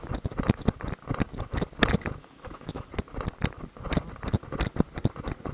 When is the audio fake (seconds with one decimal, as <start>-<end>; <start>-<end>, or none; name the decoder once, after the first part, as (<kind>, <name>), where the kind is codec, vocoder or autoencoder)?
2.2-2.9 (autoencoder, DAC-VAE)